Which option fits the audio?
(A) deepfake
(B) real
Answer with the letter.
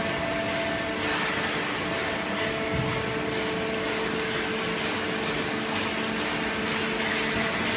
B